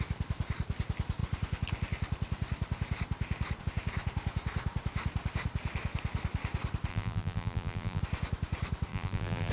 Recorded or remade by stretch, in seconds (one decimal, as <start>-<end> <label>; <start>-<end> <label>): 0.0-6.9 recorded; 6.9-8.0 remade; 8.0-8.9 recorded; 8.9-9.5 remade